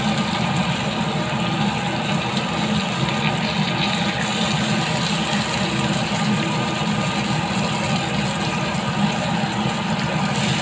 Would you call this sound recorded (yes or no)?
yes